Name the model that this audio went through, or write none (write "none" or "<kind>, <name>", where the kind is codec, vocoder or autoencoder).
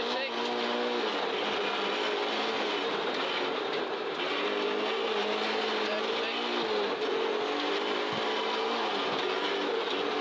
none